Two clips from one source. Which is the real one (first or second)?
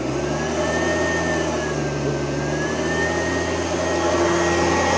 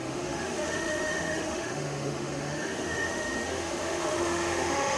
first